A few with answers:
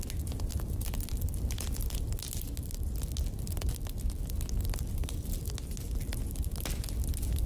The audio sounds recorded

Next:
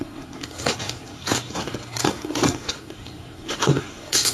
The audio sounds remade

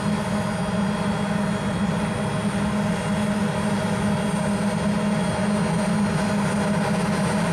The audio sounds recorded